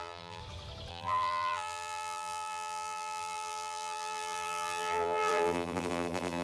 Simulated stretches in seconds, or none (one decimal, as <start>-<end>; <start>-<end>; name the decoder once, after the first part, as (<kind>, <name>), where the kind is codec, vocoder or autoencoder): 0.0-0.4 (vocoder, BigVGAN v2); 0.9-6.4